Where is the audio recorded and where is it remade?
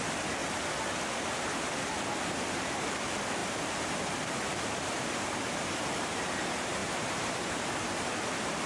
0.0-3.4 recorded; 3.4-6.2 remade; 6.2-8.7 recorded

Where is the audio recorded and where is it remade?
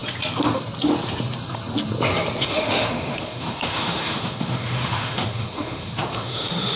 0.0-2.4 recorded; 2.4-6.8 remade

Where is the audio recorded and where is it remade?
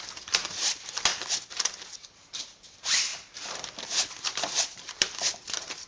0.0-1.1 remade; 1.1-2.0 recorded; 2.0-3.1 remade; 3.1-4.1 recorded; 4.1-5.9 remade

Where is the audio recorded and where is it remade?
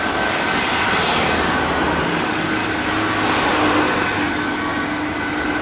0.0-0.7 remade; 0.7-2.0 recorded; 2.0-2.6 remade; 2.6-4.3 recorded; 4.3-4.7 remade; 4.7-5.6 recorded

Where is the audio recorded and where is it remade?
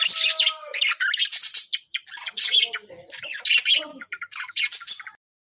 0.0-3.9 recorded; 3.9-4.6 remade; 4.6-5.6 recorded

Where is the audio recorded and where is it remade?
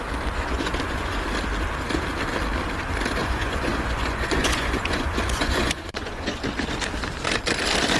0.0-0.4 recorded; 0.4-1.2 remade; 1.2-3.2 recorded; 3.2-6.3 remade; 6.3-8.0 recorded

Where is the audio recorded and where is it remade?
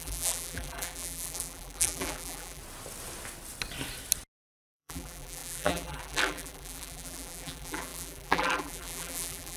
0.0-2.6 remade; 2.6-4.6 recorded; 4.6-9.6 remade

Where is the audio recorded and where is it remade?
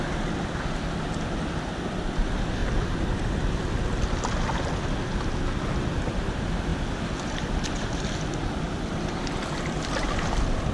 0.0-10.7 recorded